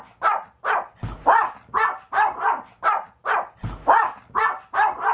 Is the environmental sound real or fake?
real